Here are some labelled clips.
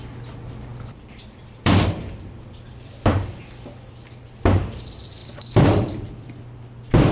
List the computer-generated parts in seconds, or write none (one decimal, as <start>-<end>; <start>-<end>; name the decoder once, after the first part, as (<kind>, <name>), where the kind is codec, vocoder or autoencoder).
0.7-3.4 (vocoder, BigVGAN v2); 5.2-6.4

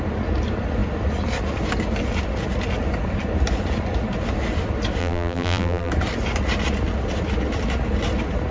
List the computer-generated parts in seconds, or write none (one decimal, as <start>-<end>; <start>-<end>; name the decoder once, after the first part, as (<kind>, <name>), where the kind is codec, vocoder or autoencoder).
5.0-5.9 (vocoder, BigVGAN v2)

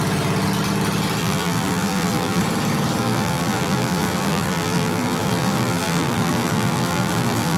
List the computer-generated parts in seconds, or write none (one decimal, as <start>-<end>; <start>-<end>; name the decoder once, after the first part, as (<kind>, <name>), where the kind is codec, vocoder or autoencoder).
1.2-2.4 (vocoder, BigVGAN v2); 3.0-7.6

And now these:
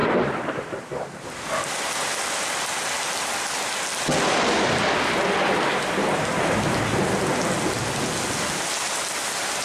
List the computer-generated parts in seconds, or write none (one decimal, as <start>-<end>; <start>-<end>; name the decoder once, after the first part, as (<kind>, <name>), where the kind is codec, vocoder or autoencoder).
0.0-1.5 (vocoder, BigVGAN v2)